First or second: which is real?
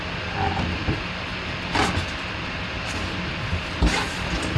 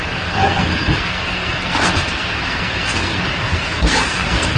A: first